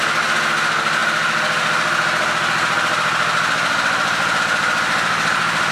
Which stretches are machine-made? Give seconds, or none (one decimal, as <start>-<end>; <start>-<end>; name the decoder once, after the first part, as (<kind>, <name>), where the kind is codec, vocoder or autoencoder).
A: none